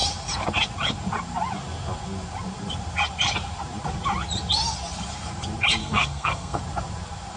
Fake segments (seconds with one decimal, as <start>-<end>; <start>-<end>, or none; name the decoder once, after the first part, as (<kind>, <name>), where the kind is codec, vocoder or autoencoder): 5.8-6.6 (codec, SNAC)